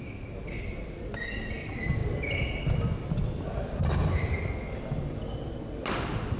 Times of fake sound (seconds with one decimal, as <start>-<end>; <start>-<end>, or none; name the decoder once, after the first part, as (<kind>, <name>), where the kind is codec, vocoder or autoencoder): none

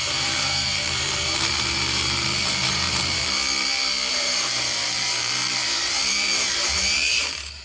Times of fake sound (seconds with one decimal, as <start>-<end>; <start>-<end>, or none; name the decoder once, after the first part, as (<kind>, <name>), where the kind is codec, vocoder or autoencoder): 0.0-3.2 (vocoder, BigVGAN v2); 4.1-7.6

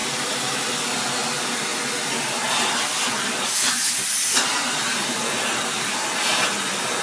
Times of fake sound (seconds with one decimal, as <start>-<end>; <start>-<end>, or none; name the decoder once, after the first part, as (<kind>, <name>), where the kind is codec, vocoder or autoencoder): 0.0-0.7 (vocoder, BigVGAN v2)

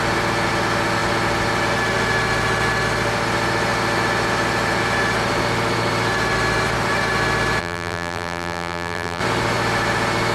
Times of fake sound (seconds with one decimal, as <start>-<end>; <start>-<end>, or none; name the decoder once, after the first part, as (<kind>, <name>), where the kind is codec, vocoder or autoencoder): 7.6-9.2 (vocoder, BigVGAN v2)

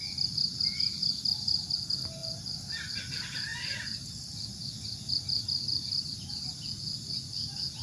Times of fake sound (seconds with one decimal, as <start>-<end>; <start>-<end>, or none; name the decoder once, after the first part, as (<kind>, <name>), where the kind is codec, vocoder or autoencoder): 3.5-4.2 (vocoder, BigVGAN v2)

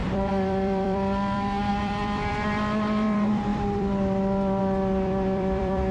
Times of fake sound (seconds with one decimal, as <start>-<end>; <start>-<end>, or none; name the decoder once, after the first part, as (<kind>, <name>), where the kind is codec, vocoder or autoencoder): 0.0-5.9 (vocoder, BigVGAN v2)